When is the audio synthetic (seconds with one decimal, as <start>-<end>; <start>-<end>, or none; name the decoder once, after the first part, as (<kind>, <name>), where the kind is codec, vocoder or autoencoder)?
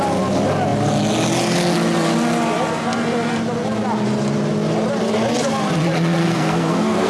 6.2-7.1 (codec, SNAC)